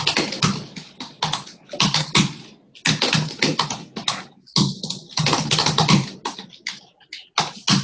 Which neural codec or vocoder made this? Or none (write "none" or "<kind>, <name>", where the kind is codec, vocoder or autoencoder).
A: none